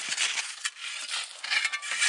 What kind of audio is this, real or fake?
real